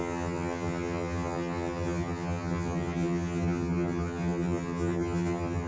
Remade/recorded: remade